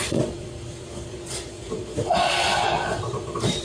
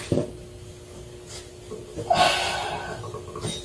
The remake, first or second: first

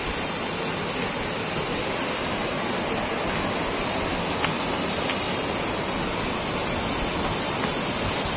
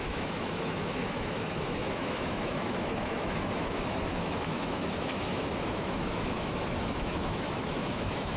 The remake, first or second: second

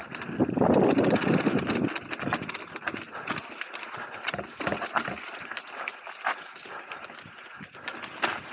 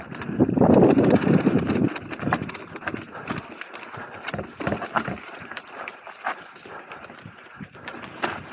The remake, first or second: second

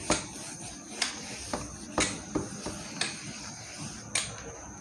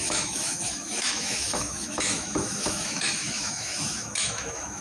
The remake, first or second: second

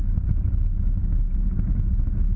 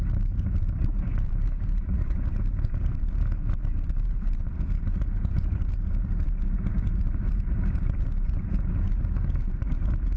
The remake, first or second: second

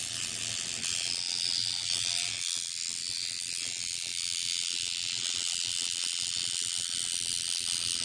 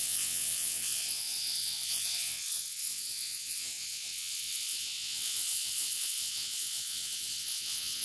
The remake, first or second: second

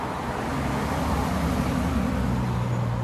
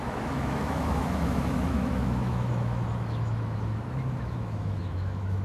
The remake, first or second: second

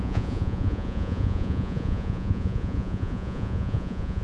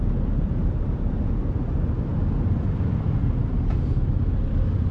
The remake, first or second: first